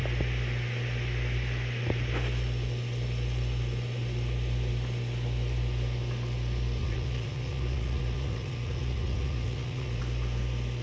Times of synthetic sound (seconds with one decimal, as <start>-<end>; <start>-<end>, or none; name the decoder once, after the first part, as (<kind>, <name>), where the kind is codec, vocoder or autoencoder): 6.8-10.0 (vocoder, Vocos)